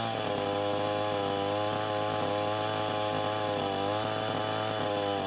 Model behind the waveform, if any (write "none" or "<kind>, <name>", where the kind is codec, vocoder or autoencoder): none